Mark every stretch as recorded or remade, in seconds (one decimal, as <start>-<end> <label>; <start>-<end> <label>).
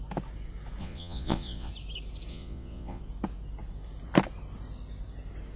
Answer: 0.0-0.8 recorded; 0.8-1.7 remade; 1.7-2.3 recorded; 2.3-3.0 remade; 3.0-5.6 recorded